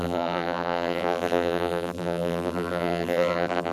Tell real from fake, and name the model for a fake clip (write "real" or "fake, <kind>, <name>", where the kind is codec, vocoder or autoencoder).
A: fake, vocoder, BigVGAN v2